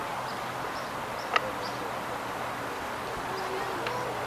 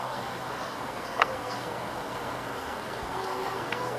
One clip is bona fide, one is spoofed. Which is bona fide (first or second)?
first